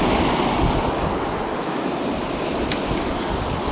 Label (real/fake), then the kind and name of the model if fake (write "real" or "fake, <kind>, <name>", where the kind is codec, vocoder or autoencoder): real